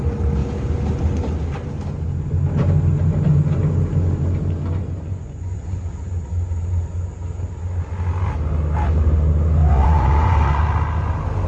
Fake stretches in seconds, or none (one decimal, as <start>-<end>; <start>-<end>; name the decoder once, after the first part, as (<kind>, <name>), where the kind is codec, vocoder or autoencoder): 4.8-5.8 (vocoder, Vocos); 9.6-10.6